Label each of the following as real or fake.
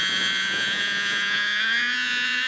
fake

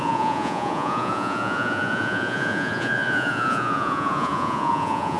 fake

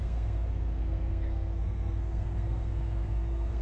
fake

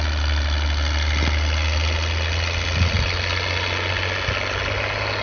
real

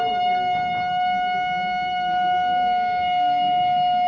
real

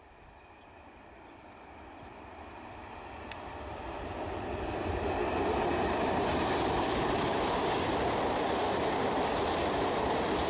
fake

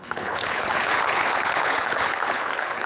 fake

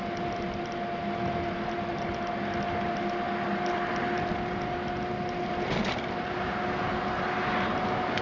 real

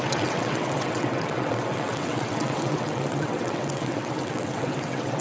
fake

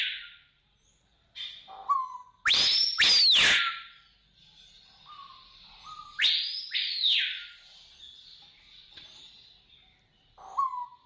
real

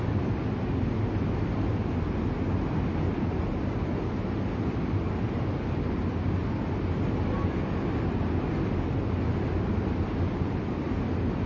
real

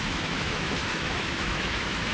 fake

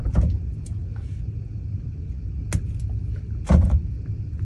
real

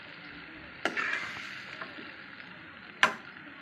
real